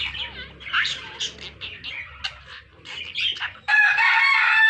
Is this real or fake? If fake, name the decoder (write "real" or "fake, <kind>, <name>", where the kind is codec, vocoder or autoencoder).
real